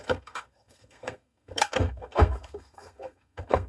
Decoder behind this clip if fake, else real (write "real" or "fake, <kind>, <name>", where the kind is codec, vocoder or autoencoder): fake, codec, SNAC